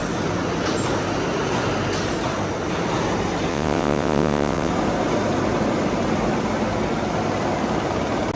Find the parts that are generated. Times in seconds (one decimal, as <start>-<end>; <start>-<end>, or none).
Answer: 3.5-4.7